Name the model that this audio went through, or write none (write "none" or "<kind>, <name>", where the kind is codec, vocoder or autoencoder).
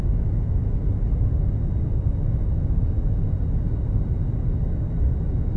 none